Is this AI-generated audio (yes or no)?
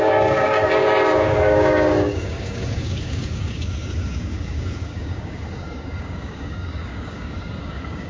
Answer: yes